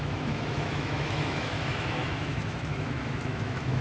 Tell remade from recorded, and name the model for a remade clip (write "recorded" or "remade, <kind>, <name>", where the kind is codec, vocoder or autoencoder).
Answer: remade, autoencoder, DAC-VAE